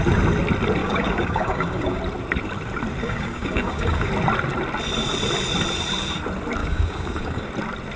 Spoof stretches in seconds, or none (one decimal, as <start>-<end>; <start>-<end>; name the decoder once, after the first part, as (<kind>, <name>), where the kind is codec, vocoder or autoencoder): 0.8-2.0 (codec, DAC); 3.0-4.1; 6.6-7.5